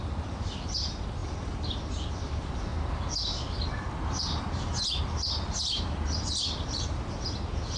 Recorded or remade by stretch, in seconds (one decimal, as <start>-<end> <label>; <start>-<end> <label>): 0.0-7.8 recorded